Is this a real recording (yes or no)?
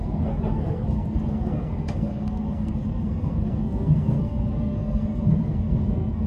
no